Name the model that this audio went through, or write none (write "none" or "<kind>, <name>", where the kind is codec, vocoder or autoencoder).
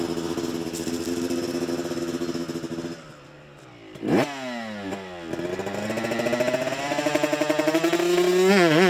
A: none